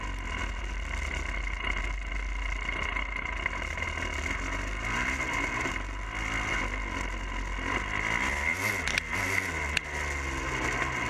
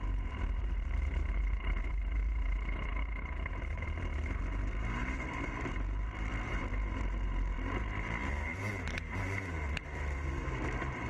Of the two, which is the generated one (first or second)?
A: second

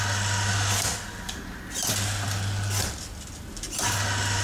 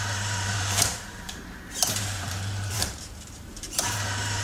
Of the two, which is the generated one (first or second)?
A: second